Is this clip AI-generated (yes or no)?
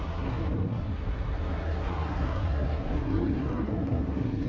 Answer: yes